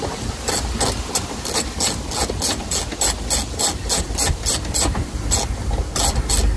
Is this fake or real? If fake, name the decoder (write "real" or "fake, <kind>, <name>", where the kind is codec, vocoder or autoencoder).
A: real